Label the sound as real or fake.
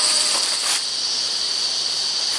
fake